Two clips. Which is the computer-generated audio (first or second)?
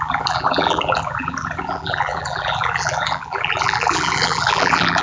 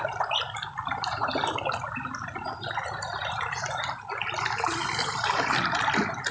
first